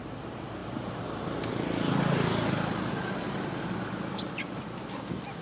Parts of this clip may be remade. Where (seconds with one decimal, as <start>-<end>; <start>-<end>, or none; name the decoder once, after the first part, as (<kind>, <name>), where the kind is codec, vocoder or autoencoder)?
none